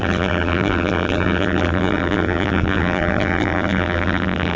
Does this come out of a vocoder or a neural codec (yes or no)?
yes